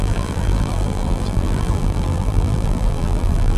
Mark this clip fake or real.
fake